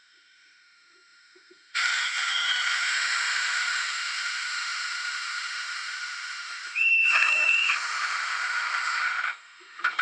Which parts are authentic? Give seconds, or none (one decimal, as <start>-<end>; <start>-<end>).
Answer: none